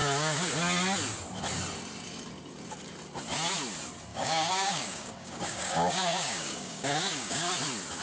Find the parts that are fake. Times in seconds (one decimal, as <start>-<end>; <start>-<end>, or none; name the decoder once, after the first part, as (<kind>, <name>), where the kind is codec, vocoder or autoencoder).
0.0-0.5 (codec, DAC); 4.1-7.5